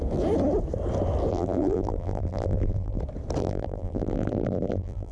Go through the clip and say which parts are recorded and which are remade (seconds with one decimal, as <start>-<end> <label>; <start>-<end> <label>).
0.0-1.3 recorded; 1.3-3.0 remade; 3.0-3.4 recorded; 3.4-5.1 remade